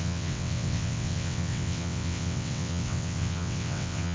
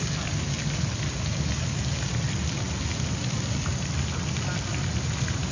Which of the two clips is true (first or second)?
second